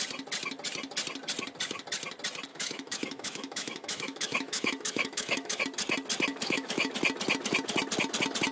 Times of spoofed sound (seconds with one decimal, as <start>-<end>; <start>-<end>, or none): 2.5-5.6; 6.3-6.9